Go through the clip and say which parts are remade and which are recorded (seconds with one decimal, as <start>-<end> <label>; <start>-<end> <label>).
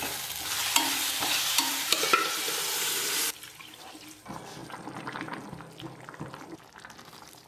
0.0-0.6 recorded; 0.6-2.0 remade; 2.0-7.5 recorded